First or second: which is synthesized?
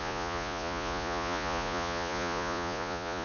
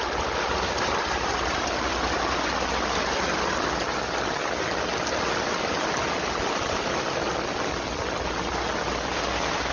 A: first